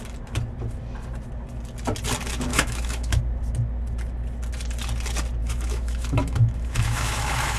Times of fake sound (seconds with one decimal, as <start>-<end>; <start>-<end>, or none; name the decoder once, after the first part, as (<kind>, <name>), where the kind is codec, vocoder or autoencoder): 2.5-3.2 (autoencoder, DAC-VAE); 5.4-7.6